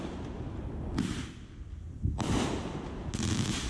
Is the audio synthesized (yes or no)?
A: no